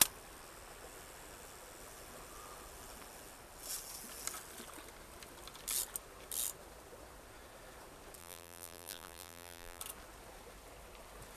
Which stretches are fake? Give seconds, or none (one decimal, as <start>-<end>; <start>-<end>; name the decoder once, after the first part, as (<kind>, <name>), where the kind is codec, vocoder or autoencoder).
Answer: 8.2-9.8 (vocoder, BigVGAN v2)